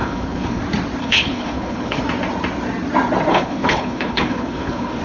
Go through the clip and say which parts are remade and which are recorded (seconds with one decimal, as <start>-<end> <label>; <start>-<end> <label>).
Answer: 0.0-0.6 remade; 0.6-1.0 recorded; 1.0-2.0 remade; 2.0-3.3 recorded; 3.3-5.0 remade